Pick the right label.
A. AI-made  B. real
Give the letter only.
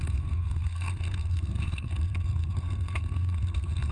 A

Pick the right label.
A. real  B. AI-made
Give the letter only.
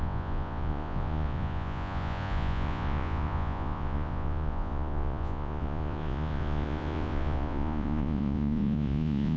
B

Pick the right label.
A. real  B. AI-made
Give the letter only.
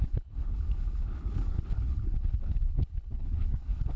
B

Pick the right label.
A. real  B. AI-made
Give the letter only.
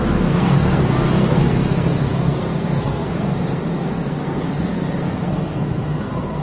B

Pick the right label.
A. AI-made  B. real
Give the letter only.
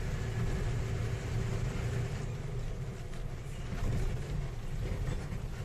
B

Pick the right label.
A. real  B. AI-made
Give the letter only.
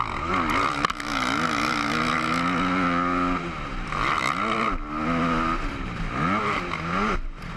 A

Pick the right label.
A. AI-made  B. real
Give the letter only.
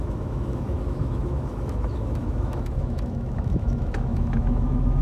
A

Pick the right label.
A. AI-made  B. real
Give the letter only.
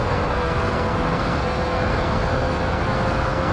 A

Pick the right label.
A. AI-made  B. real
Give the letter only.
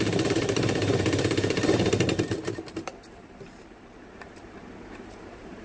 A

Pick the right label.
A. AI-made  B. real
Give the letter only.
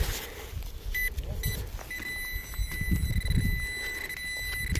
B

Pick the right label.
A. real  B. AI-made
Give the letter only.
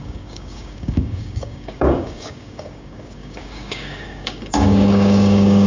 B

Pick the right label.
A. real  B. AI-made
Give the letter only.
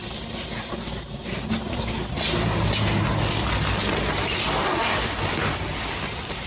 A